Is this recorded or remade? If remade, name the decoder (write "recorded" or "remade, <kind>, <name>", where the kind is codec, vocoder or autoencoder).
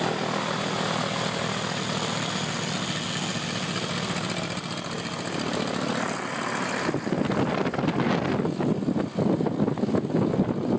recorded